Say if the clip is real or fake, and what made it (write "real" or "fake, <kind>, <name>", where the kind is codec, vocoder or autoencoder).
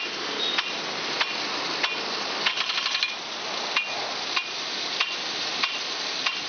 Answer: real